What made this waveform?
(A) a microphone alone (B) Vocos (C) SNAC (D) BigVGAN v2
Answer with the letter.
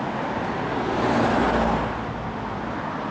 A